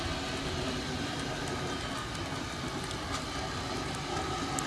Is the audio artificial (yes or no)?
no